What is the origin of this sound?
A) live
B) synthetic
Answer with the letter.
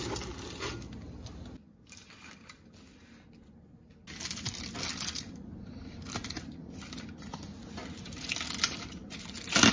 A